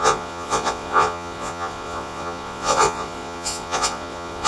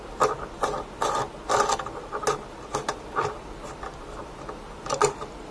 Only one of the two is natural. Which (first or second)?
second